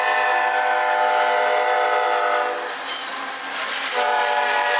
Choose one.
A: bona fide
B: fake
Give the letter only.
A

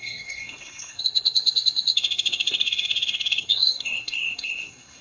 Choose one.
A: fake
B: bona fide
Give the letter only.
A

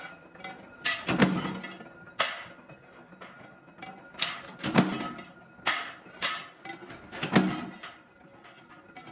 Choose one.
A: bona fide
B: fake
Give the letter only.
A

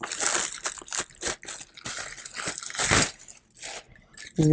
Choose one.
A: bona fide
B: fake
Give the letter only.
A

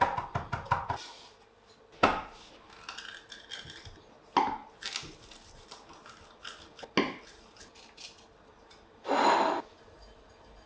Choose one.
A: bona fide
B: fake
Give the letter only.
A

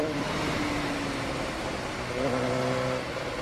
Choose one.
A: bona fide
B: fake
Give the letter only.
A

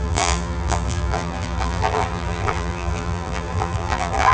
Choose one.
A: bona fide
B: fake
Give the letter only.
B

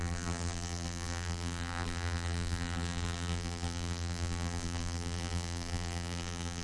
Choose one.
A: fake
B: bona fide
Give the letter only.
A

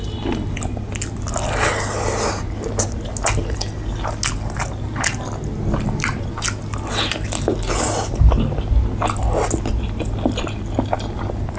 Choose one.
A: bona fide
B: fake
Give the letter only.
A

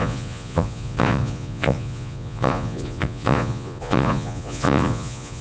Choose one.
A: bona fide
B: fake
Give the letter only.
B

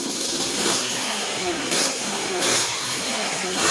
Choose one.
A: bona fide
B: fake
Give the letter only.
B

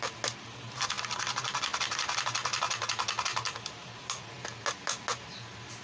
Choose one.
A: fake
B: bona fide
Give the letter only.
B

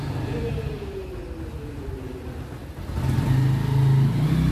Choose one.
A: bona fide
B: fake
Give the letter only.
A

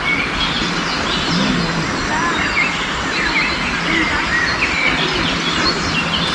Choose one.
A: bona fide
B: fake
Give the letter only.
A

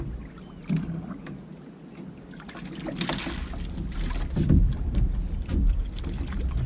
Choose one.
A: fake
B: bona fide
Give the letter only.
B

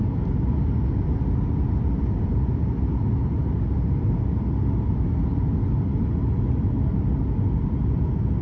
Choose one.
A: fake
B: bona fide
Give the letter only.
B